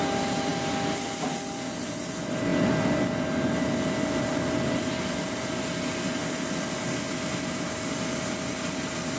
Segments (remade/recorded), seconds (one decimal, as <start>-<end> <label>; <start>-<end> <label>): 0.0-9.2 recorded